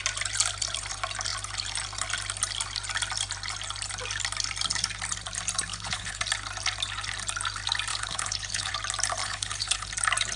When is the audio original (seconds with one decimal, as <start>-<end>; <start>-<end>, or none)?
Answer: 0.0-5.7; 6.2-7.9; 8.7-9.2; 9.9-10.4

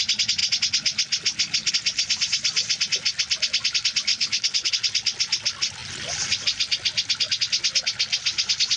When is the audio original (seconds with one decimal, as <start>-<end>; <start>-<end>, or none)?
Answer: 0.0-4.1; 4.7-8.8

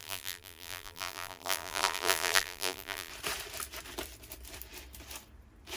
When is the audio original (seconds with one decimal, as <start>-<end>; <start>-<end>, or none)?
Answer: 3.1-5.8

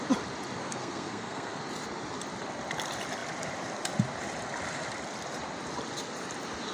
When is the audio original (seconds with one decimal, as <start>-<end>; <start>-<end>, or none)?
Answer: 0.0-0.6; 1.6-6.7

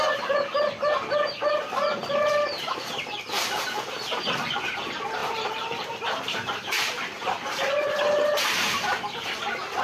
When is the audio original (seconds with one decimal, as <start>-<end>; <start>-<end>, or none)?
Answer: 0.0-5.2; 6.8-9.8

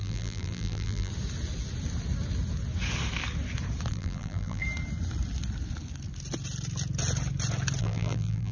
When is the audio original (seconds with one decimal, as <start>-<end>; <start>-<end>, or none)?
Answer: 1.1-3.9; 4.6-7.8